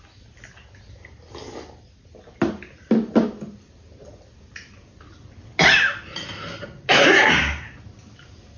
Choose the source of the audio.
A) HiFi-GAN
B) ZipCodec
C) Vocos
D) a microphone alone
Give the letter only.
D